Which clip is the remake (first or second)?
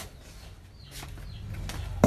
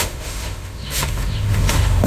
second